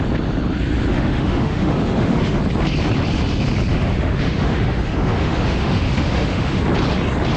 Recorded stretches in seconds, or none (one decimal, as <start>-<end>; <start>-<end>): 0.0-0.9; 2.4-3.7; 6.6-7.4